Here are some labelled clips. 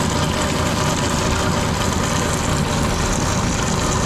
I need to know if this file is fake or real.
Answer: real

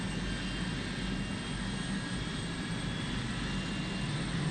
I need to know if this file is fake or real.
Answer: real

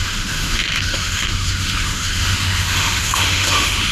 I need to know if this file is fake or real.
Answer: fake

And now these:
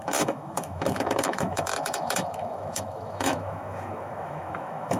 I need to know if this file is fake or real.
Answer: fake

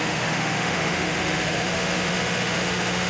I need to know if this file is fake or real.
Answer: fake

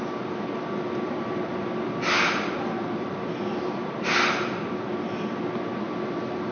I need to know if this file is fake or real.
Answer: real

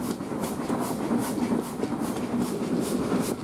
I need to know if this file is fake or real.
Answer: real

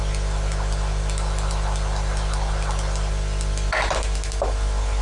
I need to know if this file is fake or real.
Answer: real